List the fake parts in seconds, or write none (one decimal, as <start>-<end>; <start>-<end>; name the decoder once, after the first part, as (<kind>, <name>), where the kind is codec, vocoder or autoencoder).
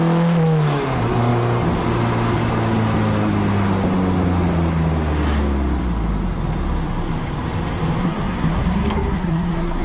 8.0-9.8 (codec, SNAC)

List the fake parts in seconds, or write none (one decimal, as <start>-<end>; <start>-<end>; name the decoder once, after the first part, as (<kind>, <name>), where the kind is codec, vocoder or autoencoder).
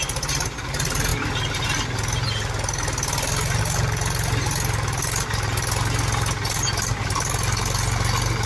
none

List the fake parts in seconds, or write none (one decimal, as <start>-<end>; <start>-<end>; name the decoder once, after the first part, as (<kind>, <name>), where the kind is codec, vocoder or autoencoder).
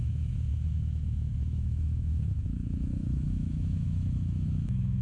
0.0-5.0 (autoencoder, DAC-VAE)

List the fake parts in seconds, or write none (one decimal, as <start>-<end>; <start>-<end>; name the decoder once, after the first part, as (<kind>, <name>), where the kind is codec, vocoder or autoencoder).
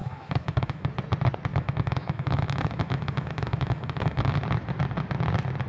0.0-0.9 (autoencoder, DAC-VAE); 1.5-4.3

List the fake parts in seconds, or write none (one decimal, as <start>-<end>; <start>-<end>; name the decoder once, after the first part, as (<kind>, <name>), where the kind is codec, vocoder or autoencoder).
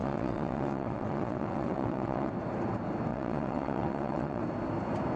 0.0-2.3 (vocoder, WaveNeXt); 3.1-4.4